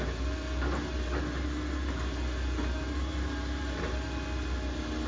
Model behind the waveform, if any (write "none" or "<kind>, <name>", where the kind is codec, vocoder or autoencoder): none